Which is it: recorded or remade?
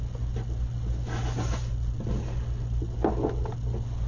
recorded